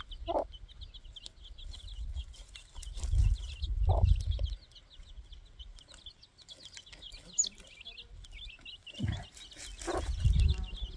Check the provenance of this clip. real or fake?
real